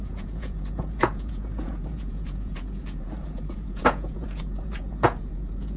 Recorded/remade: remade